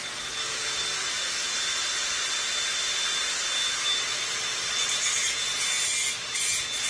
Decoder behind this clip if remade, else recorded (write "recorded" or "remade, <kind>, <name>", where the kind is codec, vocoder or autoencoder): recorded